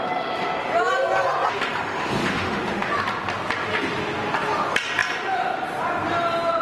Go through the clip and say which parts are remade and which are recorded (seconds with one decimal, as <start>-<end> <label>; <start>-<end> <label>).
0.0-2.2 recorded; 2.2-2.9 remade; 2.9-6.6 recorded